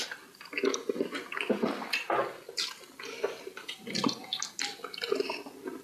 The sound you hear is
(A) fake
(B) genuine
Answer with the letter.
B